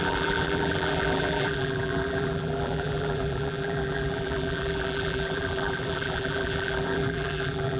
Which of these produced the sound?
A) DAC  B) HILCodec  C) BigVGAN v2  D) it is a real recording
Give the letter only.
C